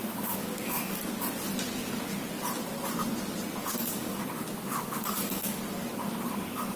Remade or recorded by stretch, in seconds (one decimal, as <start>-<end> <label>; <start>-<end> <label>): 0.0-1.0 remade; 1.0-3.6 recorded; 3.6-4.2 remade; 4.2-4.7 recorded; 4.7-5.6 remade; 5.6-6.8 recorded